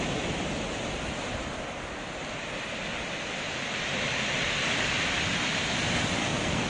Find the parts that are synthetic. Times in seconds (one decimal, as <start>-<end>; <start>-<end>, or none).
6.2-6.7